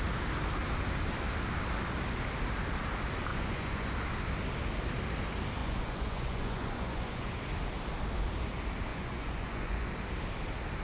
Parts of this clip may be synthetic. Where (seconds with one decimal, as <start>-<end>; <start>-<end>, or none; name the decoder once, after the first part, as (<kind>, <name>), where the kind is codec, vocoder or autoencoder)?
3.3-3.9 (vocoder, Vocos); 5.6-7.3; 8.9-9.9